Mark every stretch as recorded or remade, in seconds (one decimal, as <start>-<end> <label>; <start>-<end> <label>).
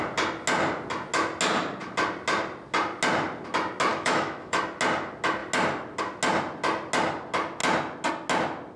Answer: 0.0-3.9 recorded; 3.9-4.6 remade; 4.6-8.8 recorded